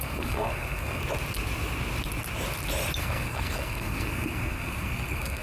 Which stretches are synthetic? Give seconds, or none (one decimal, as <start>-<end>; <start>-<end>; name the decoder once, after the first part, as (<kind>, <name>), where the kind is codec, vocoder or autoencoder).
0.0-1.0 (codec, SNAC); 3.0-5.4